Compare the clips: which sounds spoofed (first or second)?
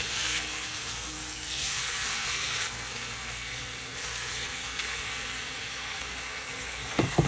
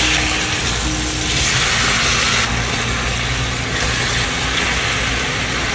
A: first